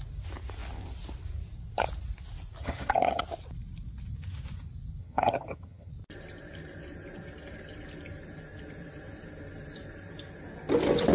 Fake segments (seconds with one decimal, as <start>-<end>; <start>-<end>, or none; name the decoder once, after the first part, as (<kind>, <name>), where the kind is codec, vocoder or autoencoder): 2.6-3.2 (vocoder, HiFi-GAN); 5.0-5.9